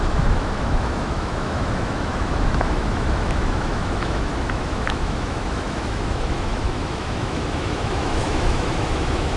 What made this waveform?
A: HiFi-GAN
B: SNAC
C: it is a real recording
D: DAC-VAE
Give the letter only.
D